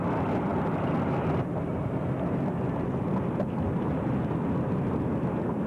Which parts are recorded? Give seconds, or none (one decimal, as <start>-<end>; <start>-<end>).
0.0-5.7